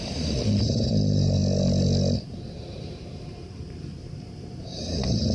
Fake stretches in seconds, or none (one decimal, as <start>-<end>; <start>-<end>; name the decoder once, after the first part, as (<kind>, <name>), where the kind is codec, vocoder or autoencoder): 0.0-1.4 (vocoder, BigVGAN v2); 2.6-5.3